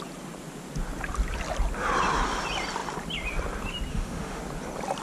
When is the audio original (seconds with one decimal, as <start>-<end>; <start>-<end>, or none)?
0.0-3.9; 4.4-5.0